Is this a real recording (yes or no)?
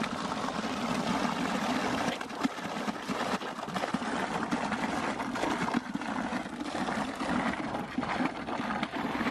yes